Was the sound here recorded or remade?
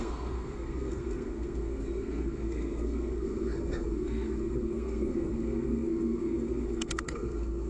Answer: remade